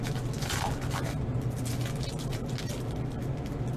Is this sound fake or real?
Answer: real